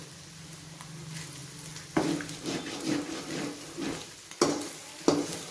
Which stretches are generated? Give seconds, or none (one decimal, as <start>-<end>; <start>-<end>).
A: none